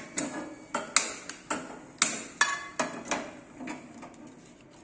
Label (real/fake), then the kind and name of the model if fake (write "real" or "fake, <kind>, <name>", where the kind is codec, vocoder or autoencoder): real